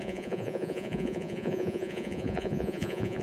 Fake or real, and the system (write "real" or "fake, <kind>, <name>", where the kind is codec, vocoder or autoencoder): fake, vocoder, Vocos